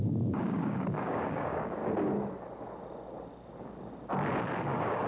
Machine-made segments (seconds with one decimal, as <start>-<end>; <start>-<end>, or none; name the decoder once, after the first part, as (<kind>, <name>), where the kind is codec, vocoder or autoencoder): 0.0-1.8 (codec, DAC); 4.6-5.1

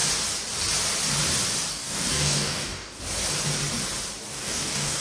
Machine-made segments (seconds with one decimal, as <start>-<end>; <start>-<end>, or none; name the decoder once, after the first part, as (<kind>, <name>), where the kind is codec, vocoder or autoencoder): 1.7-3.0 (codec, DAC); 4.3-5.0